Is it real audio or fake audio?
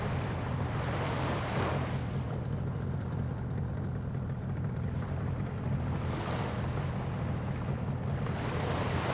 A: real